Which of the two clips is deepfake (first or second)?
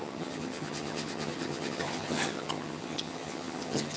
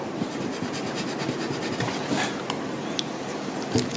first